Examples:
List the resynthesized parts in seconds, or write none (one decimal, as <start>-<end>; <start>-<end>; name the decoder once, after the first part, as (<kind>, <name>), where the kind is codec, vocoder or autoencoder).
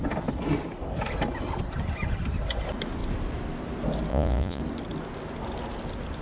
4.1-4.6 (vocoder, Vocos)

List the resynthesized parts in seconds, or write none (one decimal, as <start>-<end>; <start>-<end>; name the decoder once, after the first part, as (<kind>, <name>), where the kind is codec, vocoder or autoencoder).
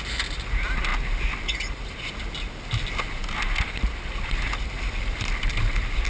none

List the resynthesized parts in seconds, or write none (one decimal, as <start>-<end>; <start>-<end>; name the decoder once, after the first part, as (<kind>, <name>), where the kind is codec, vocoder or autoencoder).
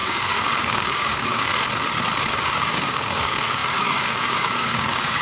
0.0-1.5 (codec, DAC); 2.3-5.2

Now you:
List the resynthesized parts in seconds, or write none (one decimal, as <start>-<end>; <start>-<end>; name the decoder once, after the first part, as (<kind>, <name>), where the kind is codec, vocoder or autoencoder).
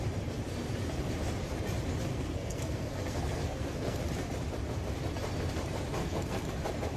2.1-4.0 (codec, SNAC); 6.0-6.5